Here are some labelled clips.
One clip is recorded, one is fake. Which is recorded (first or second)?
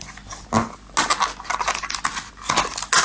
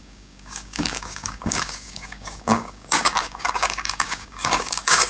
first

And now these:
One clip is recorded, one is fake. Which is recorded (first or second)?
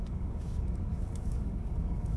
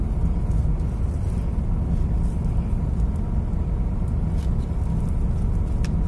second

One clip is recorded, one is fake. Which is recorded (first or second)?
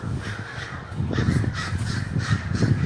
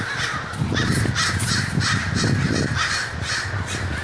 second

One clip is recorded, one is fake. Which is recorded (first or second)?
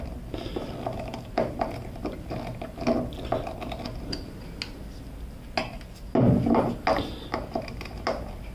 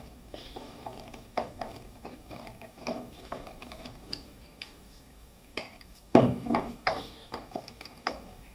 first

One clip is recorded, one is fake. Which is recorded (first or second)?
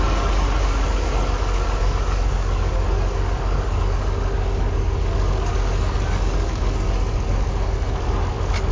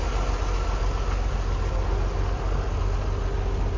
second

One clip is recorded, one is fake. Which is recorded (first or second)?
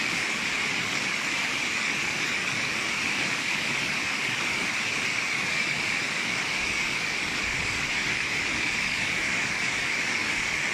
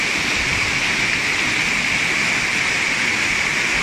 second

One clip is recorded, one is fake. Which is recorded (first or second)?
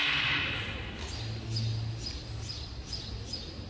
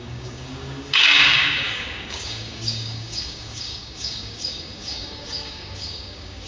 first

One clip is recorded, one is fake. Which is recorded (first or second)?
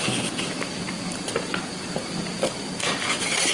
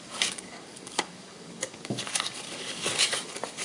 first